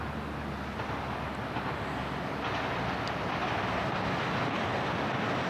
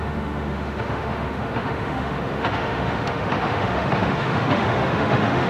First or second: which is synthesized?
second